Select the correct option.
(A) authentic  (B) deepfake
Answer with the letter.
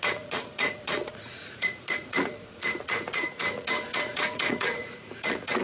B